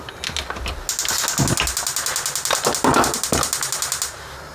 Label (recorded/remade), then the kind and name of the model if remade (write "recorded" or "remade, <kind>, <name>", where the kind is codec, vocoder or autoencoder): recorded